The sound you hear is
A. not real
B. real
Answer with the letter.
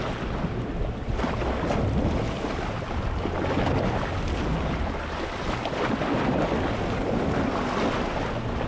B